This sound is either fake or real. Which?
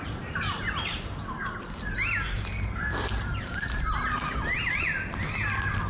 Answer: real